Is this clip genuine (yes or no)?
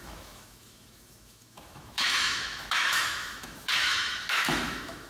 no